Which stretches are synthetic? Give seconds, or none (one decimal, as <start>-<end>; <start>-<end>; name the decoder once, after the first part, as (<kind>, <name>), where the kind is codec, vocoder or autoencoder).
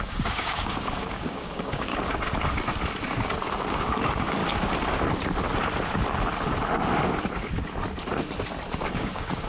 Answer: 0.0-1.9 (codec, DAC); 3.7-4.4; 8.9-9.5